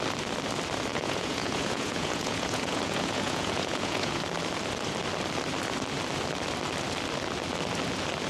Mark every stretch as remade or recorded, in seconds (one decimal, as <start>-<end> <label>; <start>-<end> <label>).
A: 0.0-0.9 recorded; 0.9-4.2 remade; 4.2-8.3 recorded